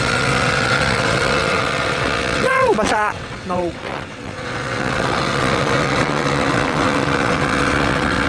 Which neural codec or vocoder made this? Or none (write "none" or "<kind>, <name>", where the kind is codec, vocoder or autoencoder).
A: vocoder, WaveNeXt